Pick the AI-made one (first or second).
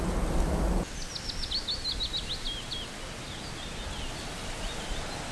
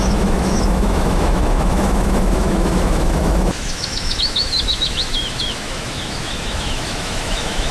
second